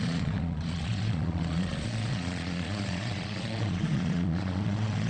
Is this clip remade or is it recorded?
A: remade